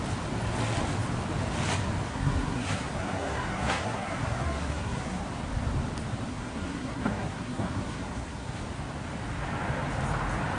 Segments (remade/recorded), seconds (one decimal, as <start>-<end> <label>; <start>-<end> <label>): 0.0-2.1 recorded; 2.1-5.2 remade; 5.2-6.3 recorded; 6.3-8.5 remade; 8.5-10.6 recorded